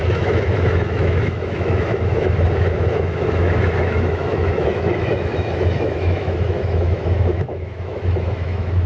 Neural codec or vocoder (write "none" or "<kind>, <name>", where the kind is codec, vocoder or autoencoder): autoencoder, DAC-VAE